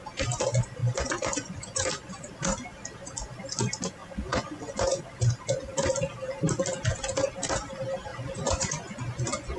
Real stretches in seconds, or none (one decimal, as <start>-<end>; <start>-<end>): 0.0-0.8; 1.9-4.0; 5.0-8.1